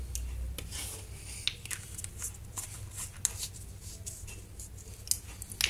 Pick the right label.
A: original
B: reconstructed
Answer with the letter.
A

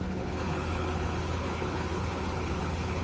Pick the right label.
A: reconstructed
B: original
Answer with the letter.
A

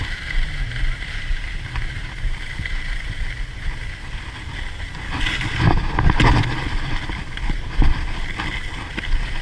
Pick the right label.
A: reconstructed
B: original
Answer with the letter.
B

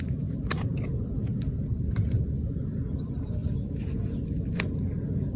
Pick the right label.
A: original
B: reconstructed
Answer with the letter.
A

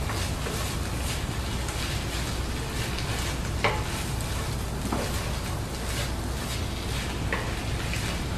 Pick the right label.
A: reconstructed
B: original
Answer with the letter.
B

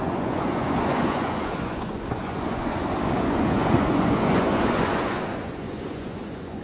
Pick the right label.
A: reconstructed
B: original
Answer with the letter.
A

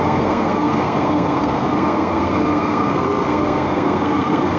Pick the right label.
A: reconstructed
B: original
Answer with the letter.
A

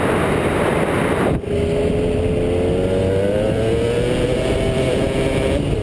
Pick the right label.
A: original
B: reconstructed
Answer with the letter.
A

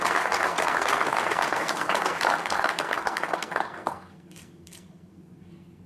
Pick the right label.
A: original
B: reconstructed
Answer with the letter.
B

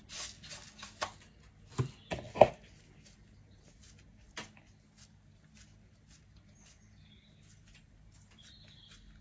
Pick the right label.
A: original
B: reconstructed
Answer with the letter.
A